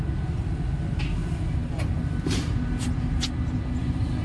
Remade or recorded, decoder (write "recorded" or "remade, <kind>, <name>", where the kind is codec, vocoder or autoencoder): recorded